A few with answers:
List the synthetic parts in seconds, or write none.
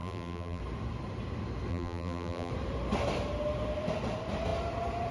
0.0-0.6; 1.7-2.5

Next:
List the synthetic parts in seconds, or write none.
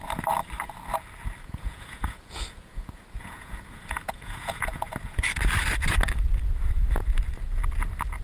1.4-5.2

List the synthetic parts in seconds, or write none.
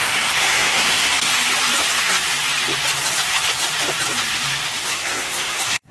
0.0-1.3; 4.8-5.9